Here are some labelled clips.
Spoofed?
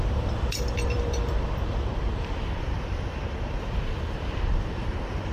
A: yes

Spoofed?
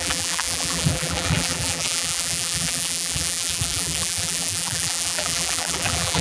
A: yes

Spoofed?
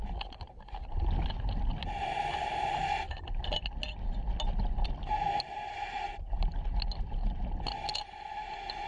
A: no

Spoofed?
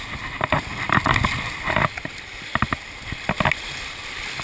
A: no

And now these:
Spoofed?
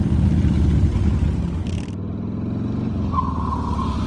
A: no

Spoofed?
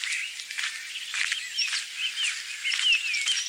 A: no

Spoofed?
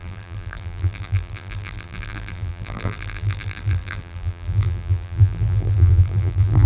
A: yes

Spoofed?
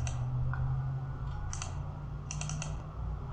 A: no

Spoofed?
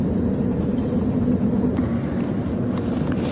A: no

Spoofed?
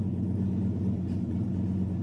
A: no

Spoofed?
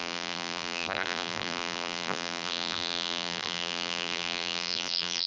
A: yes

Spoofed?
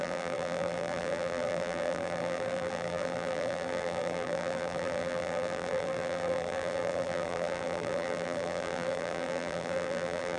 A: yes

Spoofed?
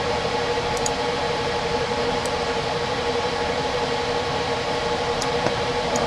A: yes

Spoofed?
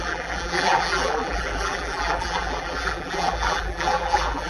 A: yes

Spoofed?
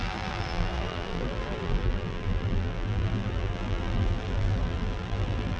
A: yes